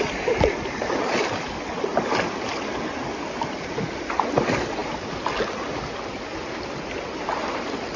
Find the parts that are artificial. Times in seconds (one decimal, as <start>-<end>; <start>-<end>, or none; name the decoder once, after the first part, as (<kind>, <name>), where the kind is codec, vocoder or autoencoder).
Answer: none